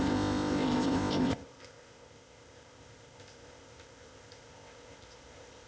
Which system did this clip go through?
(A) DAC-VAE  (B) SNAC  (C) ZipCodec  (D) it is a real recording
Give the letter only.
C